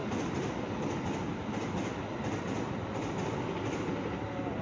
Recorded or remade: recorded